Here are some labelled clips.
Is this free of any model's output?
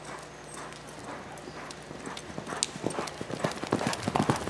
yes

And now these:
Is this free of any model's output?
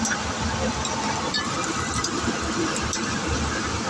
yes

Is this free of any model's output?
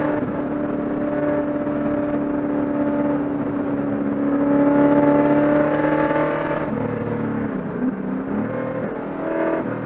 yes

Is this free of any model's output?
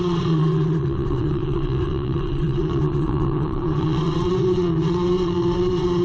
no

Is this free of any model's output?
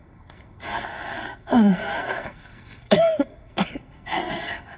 no